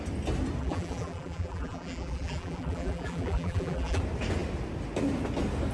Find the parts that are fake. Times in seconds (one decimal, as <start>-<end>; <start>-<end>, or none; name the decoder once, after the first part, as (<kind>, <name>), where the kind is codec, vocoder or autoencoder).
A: 0.6-4.0 (vocoder, BigVGAN v2)